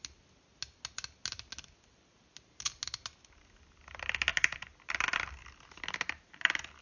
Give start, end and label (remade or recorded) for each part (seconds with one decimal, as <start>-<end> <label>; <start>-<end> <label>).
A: 0.0-6.8 recorded